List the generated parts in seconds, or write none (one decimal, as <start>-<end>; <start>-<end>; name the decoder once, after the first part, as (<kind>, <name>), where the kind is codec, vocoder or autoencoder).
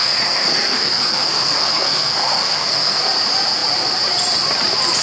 0.0-3.0 (codec, SNAC)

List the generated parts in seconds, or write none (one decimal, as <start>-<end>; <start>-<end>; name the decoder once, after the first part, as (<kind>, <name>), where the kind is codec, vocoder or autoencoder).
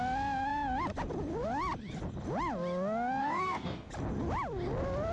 3.2-3.9 (codec, DAC)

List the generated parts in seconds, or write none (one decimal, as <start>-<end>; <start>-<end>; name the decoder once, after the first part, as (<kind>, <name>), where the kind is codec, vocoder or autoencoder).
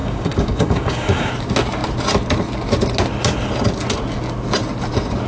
0.0-1.3 (codec, DAC)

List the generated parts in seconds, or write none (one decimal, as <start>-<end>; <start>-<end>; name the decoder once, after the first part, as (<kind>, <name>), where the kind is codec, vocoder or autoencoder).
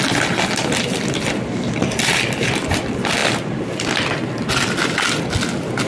none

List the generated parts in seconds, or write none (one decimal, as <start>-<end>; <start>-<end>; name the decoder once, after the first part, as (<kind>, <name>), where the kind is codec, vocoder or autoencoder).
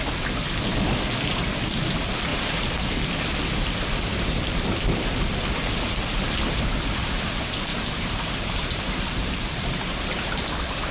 2.3-3.0 (vocoder, BigVGAN v2); 7.7-10.9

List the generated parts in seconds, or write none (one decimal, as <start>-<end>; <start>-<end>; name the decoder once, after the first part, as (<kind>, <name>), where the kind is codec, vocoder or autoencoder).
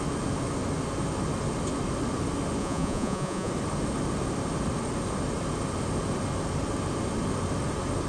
2.6-3.5 (vocoder, Vocos)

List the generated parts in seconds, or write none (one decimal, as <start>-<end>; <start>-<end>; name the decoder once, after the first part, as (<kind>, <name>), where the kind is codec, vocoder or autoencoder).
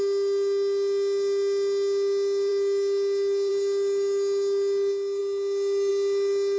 none